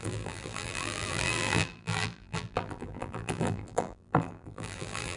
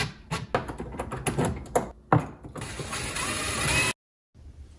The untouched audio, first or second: second